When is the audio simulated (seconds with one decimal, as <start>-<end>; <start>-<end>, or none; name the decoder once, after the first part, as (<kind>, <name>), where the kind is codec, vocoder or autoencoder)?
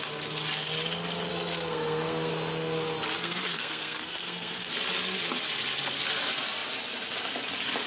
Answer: 1.3-2.3 (codec, SNAC); 3.2-4.7